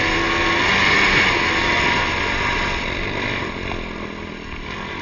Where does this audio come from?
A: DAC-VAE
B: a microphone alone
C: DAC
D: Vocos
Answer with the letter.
B